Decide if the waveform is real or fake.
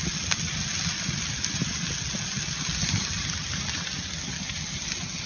real